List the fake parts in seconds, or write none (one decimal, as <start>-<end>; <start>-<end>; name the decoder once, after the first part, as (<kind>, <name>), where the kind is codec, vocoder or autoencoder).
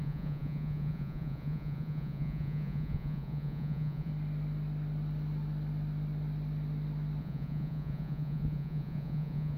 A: 0.0-4.1 (vocoder, Vocos); 7.2-9.6